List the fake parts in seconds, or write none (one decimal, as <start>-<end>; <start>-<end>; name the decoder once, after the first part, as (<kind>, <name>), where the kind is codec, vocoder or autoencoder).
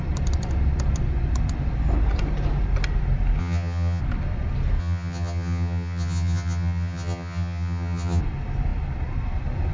3.4-4.0 (vocoder, HiFi-GAN); 4.8-8.2